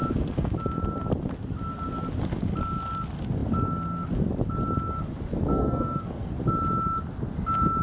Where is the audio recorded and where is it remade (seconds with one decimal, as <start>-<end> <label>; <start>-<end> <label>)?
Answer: 0.0-5.5 recorded; 5.5-6.3 remade; 6.3-7.8 recorded